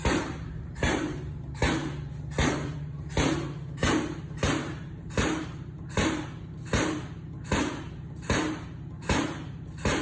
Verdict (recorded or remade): remade